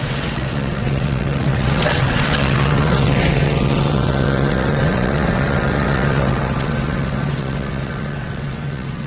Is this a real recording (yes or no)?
no